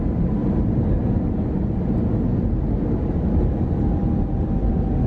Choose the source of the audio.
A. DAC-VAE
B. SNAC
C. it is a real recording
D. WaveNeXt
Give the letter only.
C